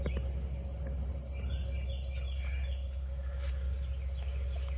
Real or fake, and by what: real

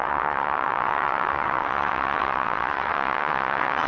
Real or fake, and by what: fake, vocoder, WaveNeXt